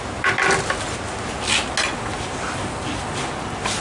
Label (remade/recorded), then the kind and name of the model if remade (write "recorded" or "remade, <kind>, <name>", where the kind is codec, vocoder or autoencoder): recorded